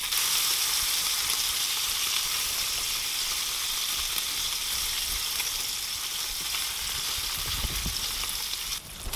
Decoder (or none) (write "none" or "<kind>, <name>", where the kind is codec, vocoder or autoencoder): none